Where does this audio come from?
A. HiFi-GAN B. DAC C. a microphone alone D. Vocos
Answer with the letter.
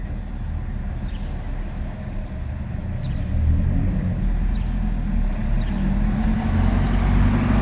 C